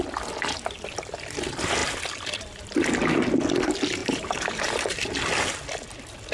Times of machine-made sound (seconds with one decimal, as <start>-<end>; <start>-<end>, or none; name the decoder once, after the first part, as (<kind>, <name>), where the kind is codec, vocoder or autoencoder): 4.0-5.1 (vocoder, BigVGAN v2)